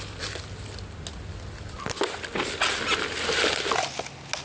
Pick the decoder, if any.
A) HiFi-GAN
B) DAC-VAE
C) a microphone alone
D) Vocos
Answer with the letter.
C